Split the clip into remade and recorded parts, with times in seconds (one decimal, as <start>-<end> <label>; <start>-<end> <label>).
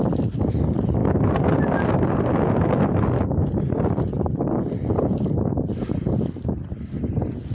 0.0-1.0 recorded; 1.0-2.2 remade; 2.2-7.5 recorded